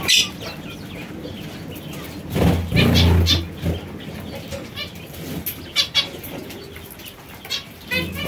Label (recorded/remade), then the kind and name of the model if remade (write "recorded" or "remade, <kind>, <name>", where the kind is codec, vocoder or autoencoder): recorded